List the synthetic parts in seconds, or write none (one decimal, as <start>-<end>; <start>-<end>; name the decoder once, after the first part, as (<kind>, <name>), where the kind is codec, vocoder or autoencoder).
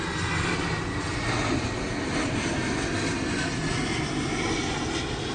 none